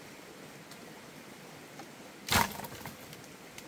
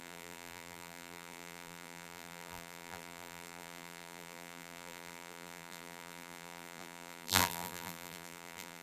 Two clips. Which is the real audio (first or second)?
first